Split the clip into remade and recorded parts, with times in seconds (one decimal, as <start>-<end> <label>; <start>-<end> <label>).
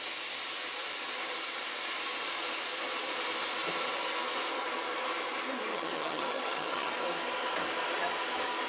0.0-5.7 recorded; 5.7-6.9 remade; 6.9-8.7 recorded